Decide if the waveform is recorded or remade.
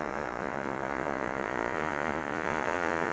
remade